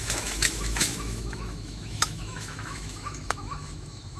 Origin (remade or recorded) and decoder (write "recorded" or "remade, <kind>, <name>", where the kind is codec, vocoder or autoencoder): remade, autoencoder, DAC-VAE